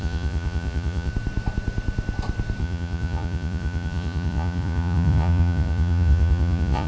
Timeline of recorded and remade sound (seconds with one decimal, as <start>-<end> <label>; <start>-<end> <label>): 0.0-1.1 remade; 1.1-2.6 recorded; 2.6-6.9 remade